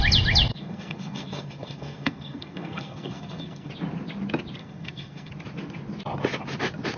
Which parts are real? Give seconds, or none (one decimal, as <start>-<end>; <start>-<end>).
0.0-0.5; 3.7-4.6; 5.3-7.0